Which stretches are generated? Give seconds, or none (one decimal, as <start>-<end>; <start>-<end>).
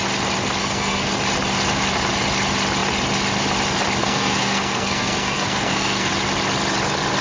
0.6-1.1; 4.0-6.1